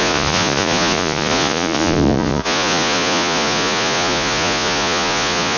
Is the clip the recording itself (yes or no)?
no